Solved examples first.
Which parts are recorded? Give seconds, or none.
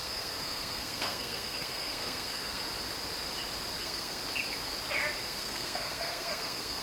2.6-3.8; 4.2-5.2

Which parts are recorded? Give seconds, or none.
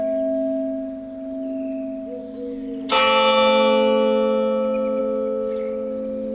0.0-6.3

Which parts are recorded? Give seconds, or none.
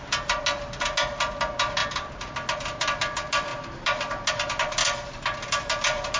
0.0-6.2